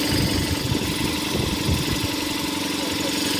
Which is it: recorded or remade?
recorded